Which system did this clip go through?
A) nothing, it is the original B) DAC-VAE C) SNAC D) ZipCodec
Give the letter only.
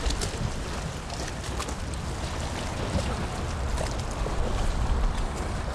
A